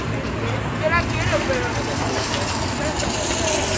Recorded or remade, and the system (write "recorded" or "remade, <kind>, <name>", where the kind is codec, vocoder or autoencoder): recorded